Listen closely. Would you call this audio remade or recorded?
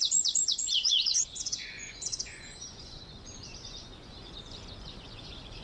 remade